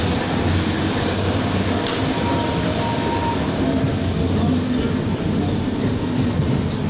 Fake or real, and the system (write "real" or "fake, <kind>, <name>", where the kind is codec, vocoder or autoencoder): real